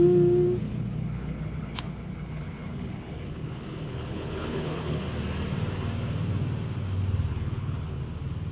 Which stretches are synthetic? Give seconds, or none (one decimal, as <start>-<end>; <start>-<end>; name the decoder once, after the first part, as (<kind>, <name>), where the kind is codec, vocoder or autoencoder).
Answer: 0.6-5.0 (codec, HILCodec); 7.3-8.0